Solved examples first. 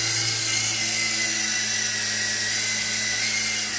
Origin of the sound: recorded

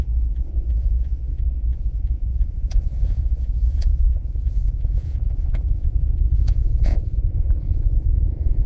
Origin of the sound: remade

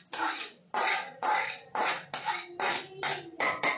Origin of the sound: recorded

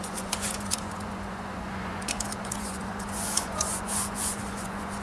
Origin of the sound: remade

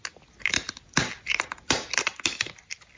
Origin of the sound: recorded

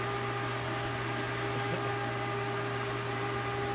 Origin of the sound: recorded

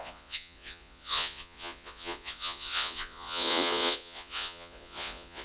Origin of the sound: remade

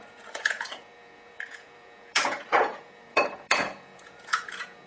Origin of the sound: remade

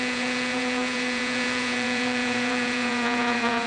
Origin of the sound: remade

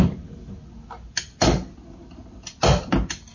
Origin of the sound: recorded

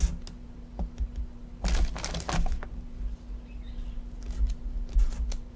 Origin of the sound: recorded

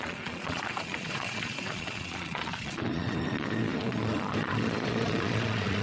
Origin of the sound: remade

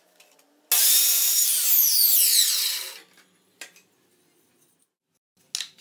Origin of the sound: recorded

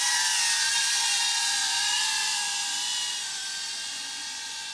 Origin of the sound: remade